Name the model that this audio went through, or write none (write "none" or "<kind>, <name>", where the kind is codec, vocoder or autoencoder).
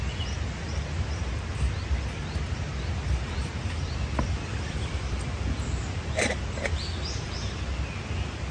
none